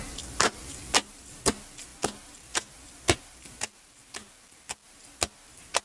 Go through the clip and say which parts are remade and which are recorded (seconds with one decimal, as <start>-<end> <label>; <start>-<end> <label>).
0.0-5.8 recorded